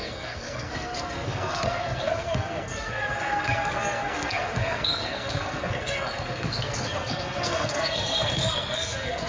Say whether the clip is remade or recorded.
remade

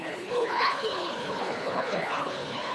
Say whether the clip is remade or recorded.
remade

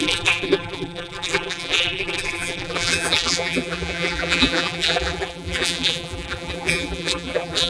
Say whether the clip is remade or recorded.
remade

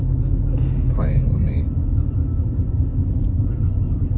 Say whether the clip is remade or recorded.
recorded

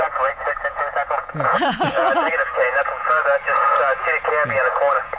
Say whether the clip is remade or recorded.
remade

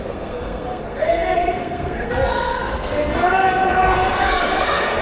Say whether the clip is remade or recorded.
remade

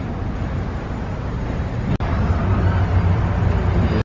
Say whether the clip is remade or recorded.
recorded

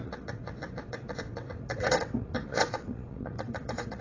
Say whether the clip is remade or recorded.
remade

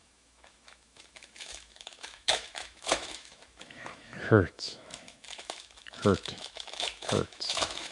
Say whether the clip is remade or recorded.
remade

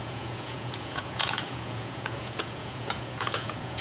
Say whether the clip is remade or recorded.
remade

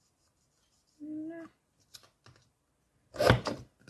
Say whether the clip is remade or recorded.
recorded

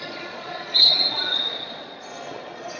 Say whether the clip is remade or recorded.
remade